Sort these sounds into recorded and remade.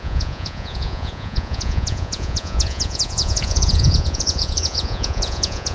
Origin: remade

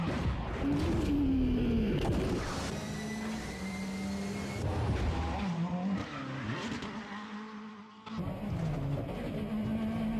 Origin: recorded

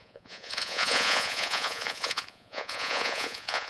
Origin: remade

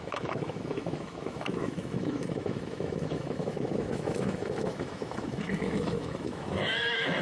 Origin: remade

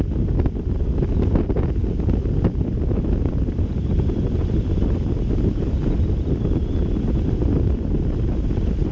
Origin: recorded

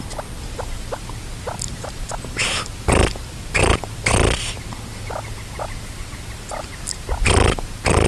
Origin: recorded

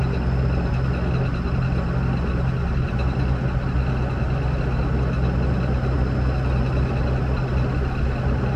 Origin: recorded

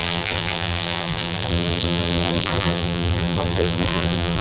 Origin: remade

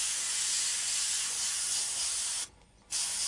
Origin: remade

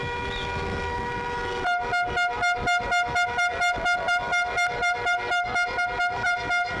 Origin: recorded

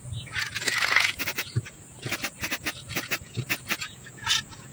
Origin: remade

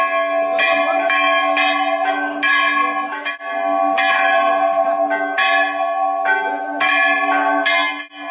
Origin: recorded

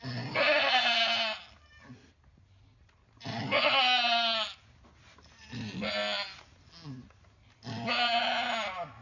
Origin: recorded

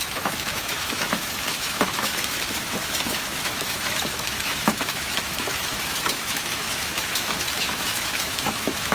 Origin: remade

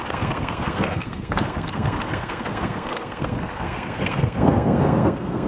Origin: remade